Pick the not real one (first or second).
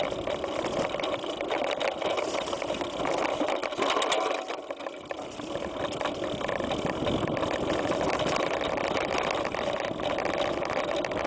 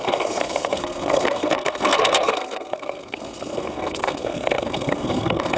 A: second